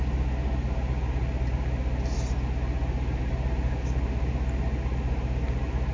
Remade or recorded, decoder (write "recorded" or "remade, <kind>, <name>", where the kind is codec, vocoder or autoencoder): recorded